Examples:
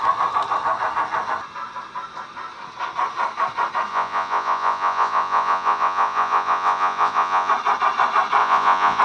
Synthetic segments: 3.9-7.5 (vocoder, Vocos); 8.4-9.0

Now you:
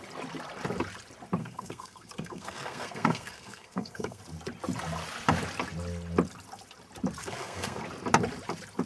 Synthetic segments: 1.4-4.2 (codec, SNAC); 7.2-7.8

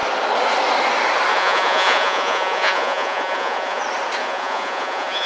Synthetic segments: 1.3-3.8 (vocoder, Vocos); 4.2-5.3